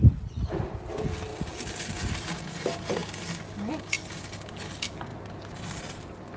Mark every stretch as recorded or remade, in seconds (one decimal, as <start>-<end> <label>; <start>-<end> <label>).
0.0-6.4 recorded